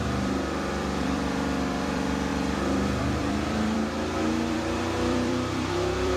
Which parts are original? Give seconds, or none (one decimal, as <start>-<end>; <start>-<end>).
none